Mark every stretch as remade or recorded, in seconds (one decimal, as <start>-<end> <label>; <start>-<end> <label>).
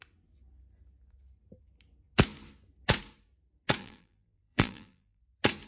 0.0-3.8 recorded; 3.8-5.2 remade; 5.2-5.7 recorded